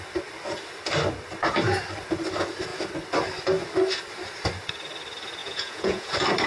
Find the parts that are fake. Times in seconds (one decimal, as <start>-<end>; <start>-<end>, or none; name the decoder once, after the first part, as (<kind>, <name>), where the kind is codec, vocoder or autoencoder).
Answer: 5.4-6.1 (vocoder, Vocos)